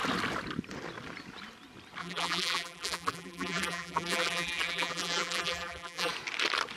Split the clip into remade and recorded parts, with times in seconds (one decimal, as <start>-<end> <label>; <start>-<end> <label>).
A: 0.0-2.0 recorded; 2.0-6.1 remade; 6.1-6.8 recorded